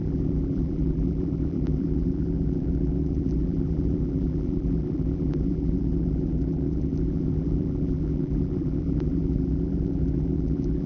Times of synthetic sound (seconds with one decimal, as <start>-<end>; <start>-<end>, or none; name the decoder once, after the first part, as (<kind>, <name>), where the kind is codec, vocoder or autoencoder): 0.0-10.9 (vocoder, BigVGAN v2)